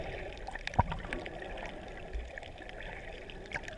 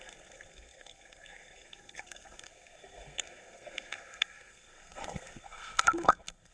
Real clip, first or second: first